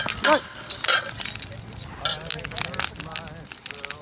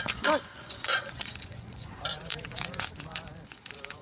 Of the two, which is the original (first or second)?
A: first